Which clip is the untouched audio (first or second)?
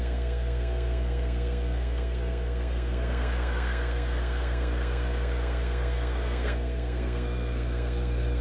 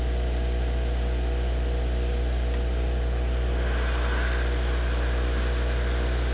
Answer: second